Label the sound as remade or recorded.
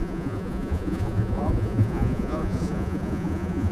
remade